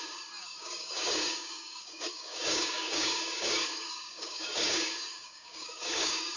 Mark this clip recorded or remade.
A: remade